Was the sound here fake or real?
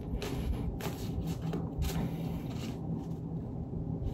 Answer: real